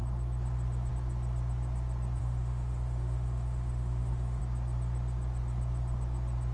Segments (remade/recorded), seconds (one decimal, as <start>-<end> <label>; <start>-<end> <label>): 0.0-2.2 recorded; 2.2-4.4 remade; 4.4-6.5 recorded